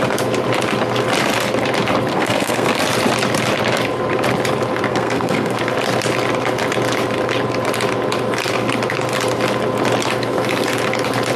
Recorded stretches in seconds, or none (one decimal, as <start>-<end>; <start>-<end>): 0.0-2.1; 2.8-4.9; 5.6-11.4